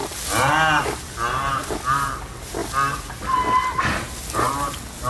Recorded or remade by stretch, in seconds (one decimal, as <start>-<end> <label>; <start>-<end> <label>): 0.0-5.1 recorded